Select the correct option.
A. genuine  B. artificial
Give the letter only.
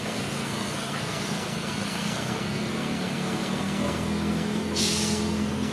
B